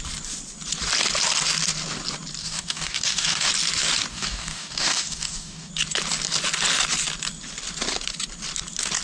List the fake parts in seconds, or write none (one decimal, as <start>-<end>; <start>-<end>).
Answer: 2.4-3.5; 4.1-5.7